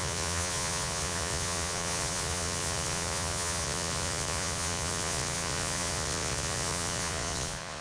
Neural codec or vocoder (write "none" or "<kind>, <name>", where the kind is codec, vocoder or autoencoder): vocoder, Vocos